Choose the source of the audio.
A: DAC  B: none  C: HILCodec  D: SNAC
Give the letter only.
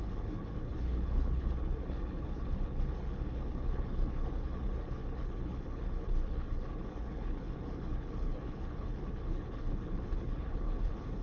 C